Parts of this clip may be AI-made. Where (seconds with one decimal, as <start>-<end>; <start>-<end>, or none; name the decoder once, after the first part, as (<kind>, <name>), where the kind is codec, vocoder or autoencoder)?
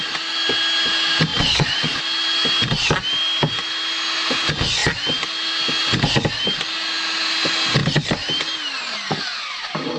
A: 1.3-2.0 (vocoder, Vocos)